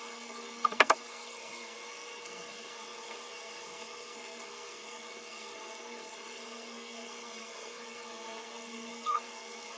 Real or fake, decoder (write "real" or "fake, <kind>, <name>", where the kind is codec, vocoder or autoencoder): fake, codec, SNAC